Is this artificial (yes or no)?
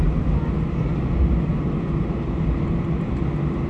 no